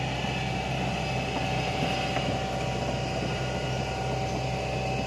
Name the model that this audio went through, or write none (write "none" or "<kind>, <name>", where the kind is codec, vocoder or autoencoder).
none